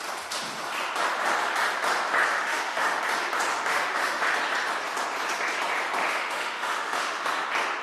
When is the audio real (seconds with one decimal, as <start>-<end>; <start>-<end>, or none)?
0.0-2.3; 3.0-3.5; 4.2-6.0; 7.3-7.8